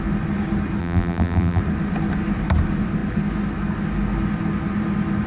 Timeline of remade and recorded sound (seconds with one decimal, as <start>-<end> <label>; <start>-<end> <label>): 0.0-0.8 recorded; 0.8-1.6 remade; 1.6-5.3 recorded